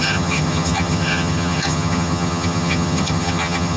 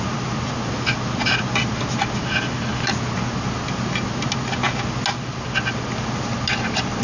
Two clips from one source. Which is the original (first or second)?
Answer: second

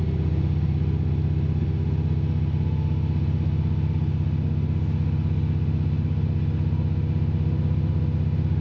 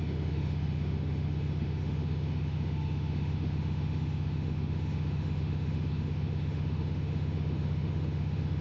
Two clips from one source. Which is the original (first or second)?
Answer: first